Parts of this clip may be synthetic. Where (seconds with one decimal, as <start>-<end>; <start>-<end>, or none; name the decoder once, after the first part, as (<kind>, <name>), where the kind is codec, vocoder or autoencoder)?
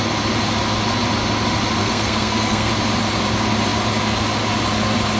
1.8-2.7 (codec, SNAC)